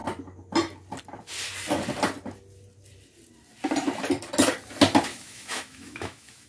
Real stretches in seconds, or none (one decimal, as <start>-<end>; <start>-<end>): 0.0-5.1